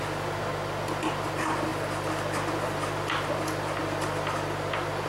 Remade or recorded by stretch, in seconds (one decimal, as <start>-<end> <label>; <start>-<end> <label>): 0.0-5.1 recorded